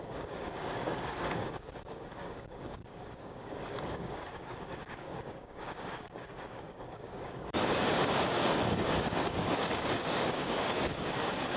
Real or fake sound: fake